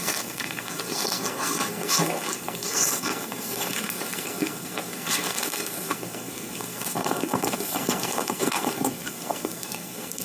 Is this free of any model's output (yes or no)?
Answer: no